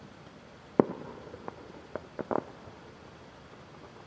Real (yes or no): yes